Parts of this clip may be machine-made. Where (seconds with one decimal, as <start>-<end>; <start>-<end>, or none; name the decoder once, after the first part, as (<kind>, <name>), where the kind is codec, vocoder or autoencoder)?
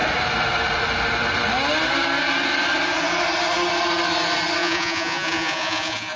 4.6-6.2 (vocoder, Vocos)